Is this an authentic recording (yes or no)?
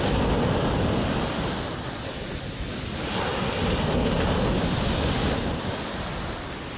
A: yes